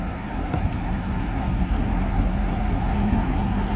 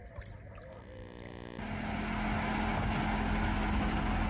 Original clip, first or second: second